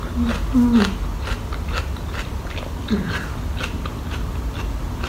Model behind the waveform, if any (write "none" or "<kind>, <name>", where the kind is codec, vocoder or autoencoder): none